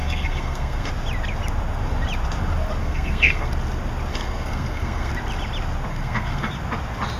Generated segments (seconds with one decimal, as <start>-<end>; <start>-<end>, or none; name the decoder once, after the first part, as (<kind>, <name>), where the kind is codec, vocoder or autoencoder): 0.0-0.9 (codec, SNAC); 2.8-3.5; 4.1-5.1; 5.9-6.5